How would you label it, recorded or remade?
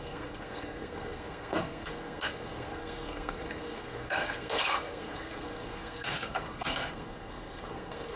remade